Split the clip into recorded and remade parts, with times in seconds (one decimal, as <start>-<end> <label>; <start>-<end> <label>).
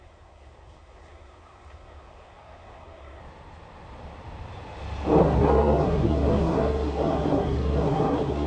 0.0-3.2 remade; 3.2-5.2 recorded; 5.2-8.5 remade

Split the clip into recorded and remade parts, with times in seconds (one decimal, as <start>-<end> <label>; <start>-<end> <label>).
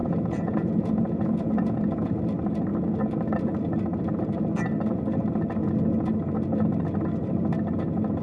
0.0-2.1 remade; 2.1-8.2 recorded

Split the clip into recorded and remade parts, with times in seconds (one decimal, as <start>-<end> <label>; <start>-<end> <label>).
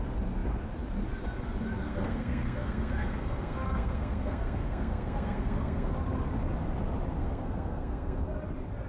0.0-1.8 recorded; 1.8-5.9 remade; 5.9-7.2 recorded; 7.2-8.2 remade; 8.2-8.9 recorded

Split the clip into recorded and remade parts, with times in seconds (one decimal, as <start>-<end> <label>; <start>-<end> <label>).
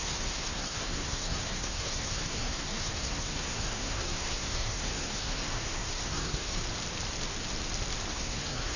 0.0-6.6 remade; 6.6-8.1 recorded; 8.1-8.8 remade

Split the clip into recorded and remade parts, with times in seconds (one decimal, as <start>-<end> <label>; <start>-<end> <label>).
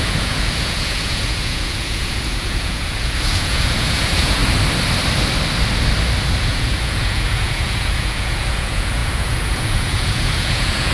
0.0-4.4 remade; 4.4-6.4 recorded; 6.4-10.9 remade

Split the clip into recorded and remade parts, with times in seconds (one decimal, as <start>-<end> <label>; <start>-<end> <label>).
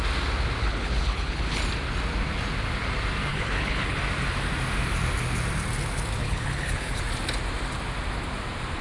0.0-0.6 recorded; 0.6-1.6 remade; 1.6-3.3 recorded; 3.3-4.0 remade; 4.0-6.2 recorded; 6.2-7.0 remade; 7.0-8.8 recorded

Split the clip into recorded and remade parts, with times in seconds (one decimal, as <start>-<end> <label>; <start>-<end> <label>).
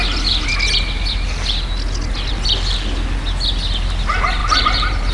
0.0-4.4 recorded; 4.4-5.1 remade